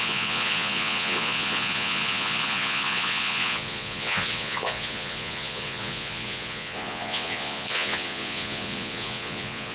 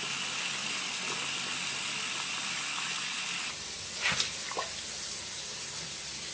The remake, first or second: first